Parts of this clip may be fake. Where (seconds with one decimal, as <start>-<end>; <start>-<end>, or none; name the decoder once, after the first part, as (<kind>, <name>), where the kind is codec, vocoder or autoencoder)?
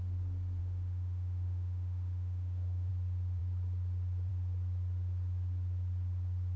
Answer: 0.6-2.9 (autoencoder, DAC-VAE)